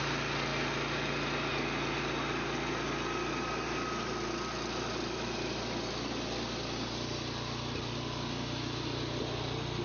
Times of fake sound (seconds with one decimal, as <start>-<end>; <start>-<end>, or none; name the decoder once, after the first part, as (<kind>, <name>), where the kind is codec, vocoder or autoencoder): none